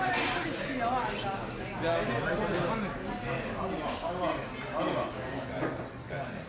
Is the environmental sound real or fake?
real